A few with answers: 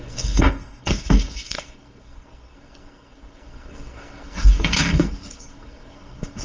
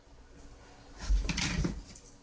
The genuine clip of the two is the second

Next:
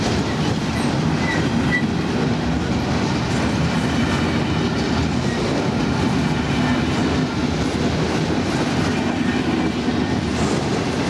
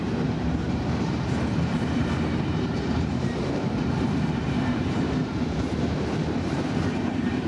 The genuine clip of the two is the first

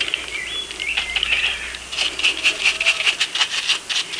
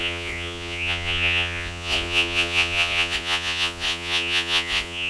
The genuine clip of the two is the first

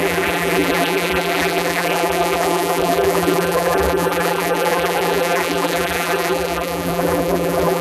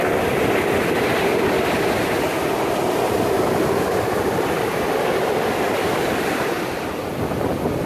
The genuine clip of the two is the second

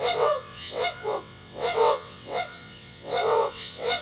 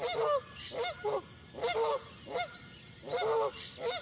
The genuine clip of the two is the second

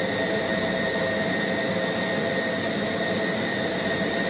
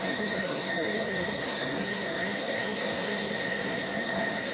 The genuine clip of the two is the first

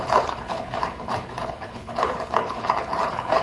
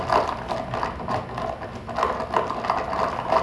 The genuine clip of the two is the second